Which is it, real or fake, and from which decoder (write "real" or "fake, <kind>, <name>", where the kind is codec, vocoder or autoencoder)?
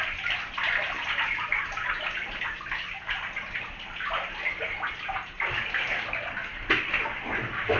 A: real